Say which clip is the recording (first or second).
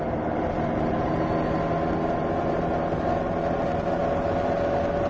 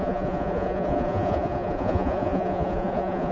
first